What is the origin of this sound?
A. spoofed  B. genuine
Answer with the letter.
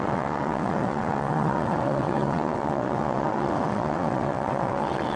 A